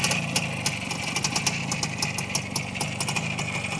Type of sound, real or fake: real